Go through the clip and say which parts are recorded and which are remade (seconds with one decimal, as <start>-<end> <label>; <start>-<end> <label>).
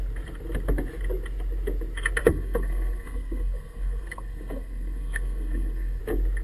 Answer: 0.0-2.2 recorded; 2.2-6.0 remade; 6.0-6.4 recorded